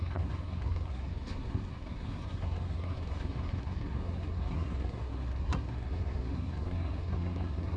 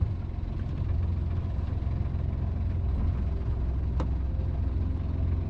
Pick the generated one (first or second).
first